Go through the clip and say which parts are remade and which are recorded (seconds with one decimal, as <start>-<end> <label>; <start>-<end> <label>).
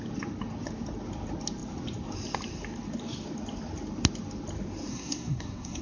0.0-4.9 recorded; 4.9-5.8 remade